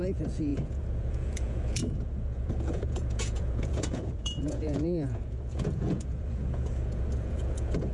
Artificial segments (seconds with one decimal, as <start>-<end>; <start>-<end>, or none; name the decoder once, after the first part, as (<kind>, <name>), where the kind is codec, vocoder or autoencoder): 0.0-7.9 (vocoder, Vocos)